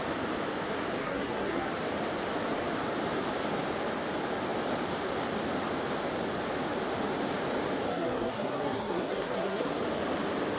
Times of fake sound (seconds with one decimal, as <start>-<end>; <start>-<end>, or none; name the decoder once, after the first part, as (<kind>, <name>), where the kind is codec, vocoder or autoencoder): 1.0-1.7 (codec, SNAC); 7.9-9.7